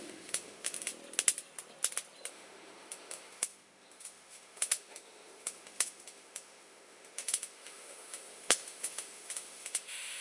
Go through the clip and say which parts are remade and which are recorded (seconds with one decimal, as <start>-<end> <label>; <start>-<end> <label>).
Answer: 0.0-0.9 remade; 0.9-2.3 recorded; 2.3-10.2 remade